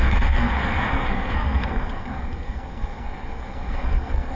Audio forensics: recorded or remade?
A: remade